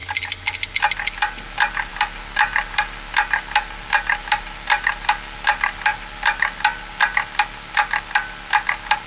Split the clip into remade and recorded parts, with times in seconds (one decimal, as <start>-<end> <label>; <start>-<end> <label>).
0.0-9.1 recorded